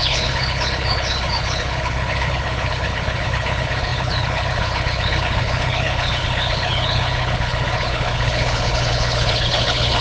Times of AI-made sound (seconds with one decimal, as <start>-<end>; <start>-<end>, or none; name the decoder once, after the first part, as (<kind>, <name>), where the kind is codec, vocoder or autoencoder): 0.0-10.0 (codec, HILCodec)